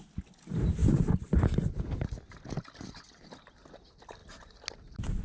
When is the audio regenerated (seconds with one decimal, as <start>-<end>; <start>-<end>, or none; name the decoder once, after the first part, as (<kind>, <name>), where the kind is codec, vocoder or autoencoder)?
none